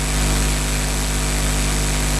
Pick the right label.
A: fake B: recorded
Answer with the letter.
B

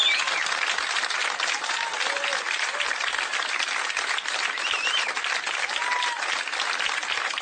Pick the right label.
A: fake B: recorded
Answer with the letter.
B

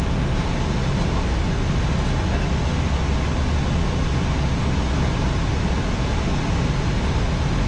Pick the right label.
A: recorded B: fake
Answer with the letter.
A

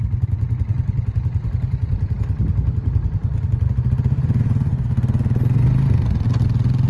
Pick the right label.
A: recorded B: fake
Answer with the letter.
A